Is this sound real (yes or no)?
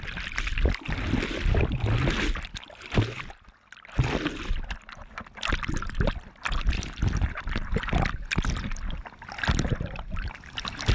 yes